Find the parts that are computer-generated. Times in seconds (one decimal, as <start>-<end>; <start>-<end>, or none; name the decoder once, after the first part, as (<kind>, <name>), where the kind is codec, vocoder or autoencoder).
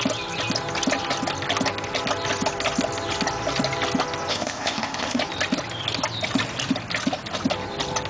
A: 4.3-5.2 (codec, ZipCodec)